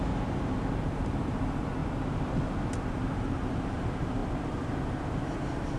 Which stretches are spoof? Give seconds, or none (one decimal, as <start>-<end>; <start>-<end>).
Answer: 0.0-1.8; 2.9-5.8